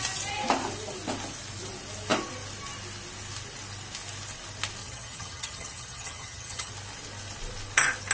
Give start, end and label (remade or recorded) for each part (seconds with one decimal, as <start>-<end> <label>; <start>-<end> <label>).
0.0-4.8 recorded; 4.8-6.7 remade; 6.7-8.1 recorded